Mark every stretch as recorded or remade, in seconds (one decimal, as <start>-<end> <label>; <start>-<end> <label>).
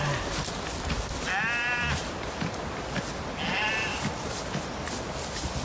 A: 0.0-5.6 recorded